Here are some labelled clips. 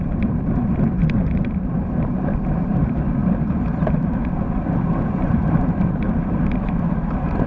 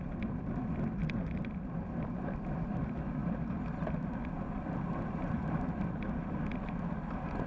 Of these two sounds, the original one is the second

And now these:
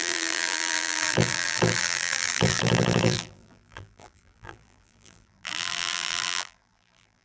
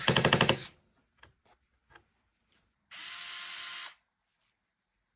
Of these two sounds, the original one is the second